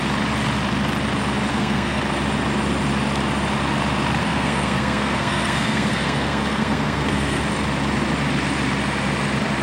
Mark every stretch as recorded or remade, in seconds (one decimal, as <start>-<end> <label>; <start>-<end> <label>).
0.0-1.5 recorded; 1.5-2.0 remade; 2.0-4.2 recorded; 4.2-7.4 remade; 7.4-9.6 recorded